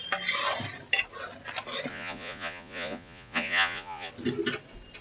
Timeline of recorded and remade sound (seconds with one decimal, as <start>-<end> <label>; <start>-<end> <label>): 0.0-1.9 recorded; 1.9-4.1 remade; 4.1-5.0 recorded